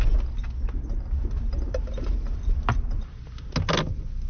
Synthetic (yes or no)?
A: no